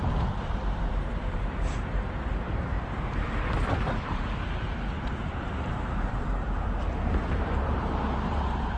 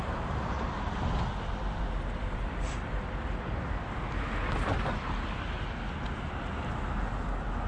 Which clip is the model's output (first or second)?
first